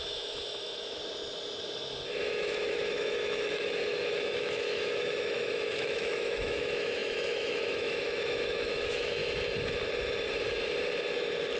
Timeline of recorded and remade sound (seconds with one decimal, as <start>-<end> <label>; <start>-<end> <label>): 0.0-1.0 remade; 1.0-2.2 recorded; 2.2-9.2 remade; 9.2-11.6 recorded